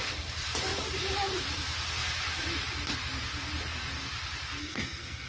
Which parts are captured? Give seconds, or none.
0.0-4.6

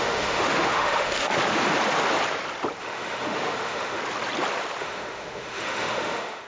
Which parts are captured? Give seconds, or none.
1.3-2.8; 4.0-4.8

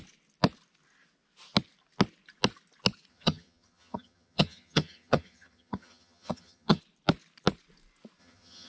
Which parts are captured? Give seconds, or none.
0.0-3.1; 6.8-8.2

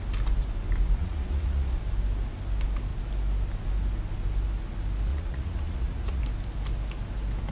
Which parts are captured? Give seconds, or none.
0.0-1.0; 1.8-5.1; 6.2-7.5

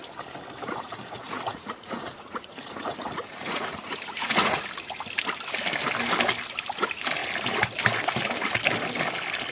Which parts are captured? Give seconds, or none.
0.0-0.6; 4.7-9.5